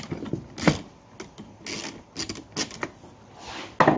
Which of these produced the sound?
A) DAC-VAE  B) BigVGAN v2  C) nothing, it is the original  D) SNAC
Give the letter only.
C